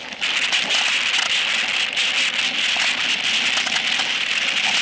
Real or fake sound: real